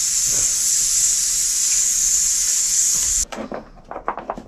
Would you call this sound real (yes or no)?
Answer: yes